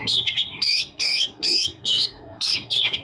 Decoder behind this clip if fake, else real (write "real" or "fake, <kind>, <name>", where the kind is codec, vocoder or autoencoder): fake, codec, SNAC